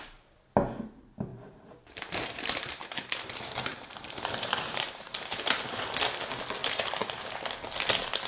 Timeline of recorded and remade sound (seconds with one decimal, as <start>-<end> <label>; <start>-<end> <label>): 0.0-1.3 recorded; 1.3-6.0 remade; 6.0-6.6 recorded; 6.6-7.2 remade; 7.2-8.3 recorded